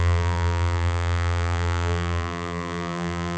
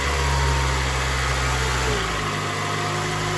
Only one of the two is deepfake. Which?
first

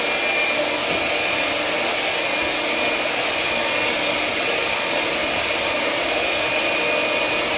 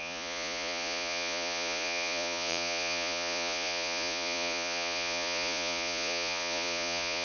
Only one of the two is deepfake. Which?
second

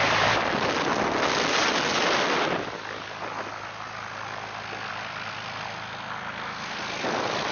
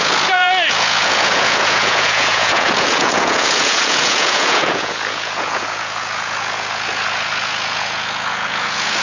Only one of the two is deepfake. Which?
second